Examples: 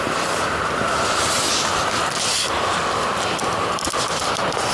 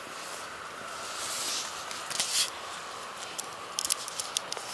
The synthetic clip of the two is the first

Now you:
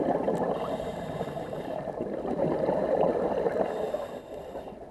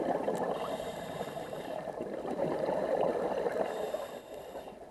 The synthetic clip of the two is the second